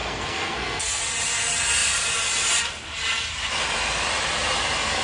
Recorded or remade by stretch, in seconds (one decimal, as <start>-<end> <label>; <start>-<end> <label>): 0.0-1.0 remade; 1.0-5.0 recorded

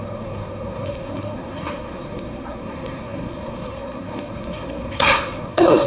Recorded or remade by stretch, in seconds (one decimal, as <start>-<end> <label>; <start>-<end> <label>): 0.0-5.9 remade

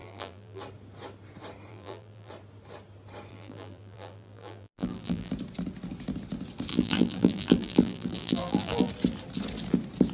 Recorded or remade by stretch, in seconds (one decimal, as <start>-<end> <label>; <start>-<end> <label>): 0.0-0.6 remade; 0.6-1.7 recorded; 1.7-2.3 remade; 2.3-3.3 recorded; 3.3-5.3 remade; 5.3-6.7 recorded; 6.7-8.9 remade; 8.9-10.1 recorded